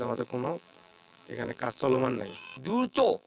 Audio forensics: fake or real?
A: fake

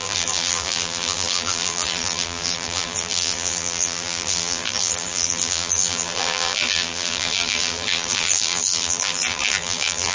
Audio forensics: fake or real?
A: fake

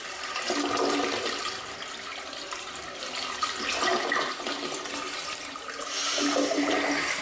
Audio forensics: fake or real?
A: real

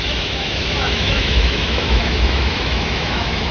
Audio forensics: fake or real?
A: fake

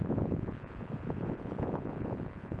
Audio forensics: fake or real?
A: fake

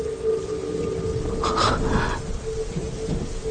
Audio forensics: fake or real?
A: real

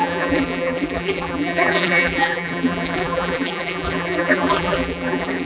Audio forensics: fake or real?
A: fake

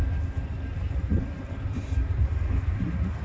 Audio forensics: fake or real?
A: real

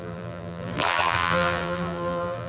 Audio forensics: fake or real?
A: fake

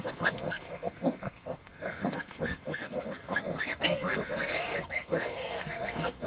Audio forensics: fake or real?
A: fake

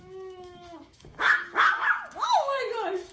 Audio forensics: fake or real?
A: fake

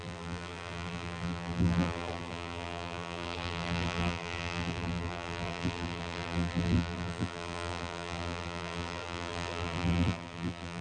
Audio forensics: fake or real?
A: fake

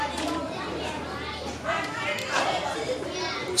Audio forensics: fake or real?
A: real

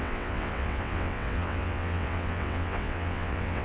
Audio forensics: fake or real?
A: fake